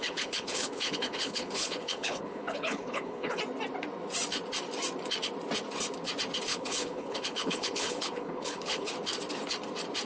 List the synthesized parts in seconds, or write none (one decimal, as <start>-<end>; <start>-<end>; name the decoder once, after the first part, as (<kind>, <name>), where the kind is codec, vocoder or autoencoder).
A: 0.0-3.4 (codec, HILCodec); 6.5-8.9